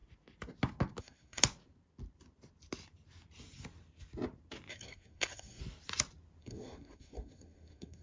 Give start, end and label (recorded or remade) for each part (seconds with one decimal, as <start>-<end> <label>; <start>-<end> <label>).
0.0-1.0 recorded; 1.0-1.4 remade; 1.4-4.7 recorded; 4.7-5.6 remade; 5.6-6.4 recorded; 6.4-8.0 remade